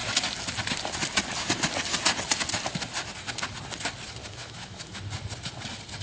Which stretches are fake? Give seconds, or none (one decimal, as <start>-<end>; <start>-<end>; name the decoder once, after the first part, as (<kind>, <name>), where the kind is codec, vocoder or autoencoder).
4.2-5.0 (autoencoder, DAC-VAE)